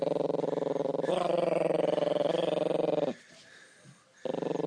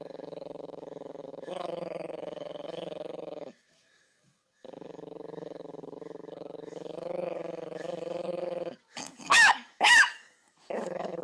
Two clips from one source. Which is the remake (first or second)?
second